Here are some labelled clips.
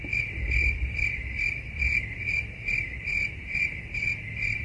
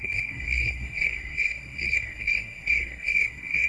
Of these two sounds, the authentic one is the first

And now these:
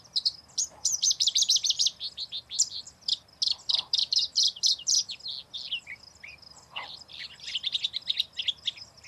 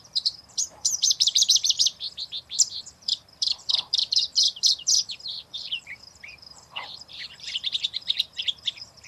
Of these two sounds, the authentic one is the first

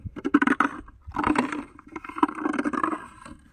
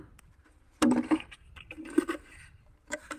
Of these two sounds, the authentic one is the first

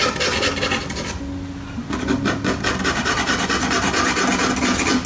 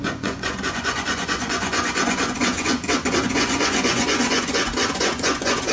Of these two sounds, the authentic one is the first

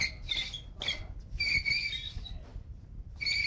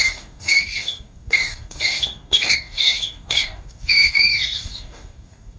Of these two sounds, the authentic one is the first